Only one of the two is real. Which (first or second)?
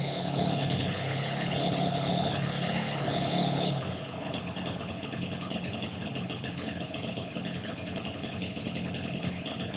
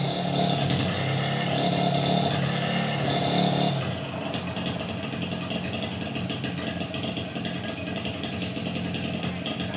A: second